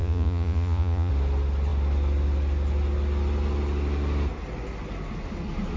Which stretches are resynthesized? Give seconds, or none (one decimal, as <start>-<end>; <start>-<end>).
0.0-1.1